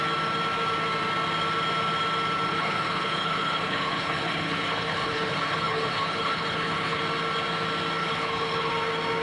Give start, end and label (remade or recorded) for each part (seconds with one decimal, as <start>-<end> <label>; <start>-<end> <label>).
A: 0.0-2.5 recorded; 2.5-7.0 remade; 7.0-8.0 recorded; 8.0-8.7 remade; 8.7-9.2 recorded